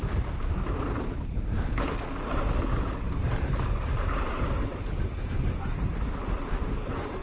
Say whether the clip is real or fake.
real